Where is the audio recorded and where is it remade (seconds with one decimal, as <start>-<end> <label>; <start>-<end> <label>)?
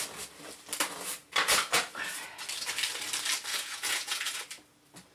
0.0-3.5 recorded; 3.5-4.4 remade; 4.4-5.1 recorded